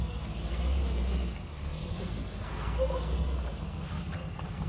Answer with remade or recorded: remade